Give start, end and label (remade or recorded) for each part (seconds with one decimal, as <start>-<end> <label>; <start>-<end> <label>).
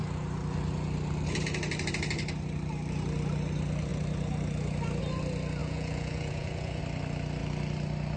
0.0-5.6 recorded; 5.6-6.8 remade; 6.8-8.2 recorded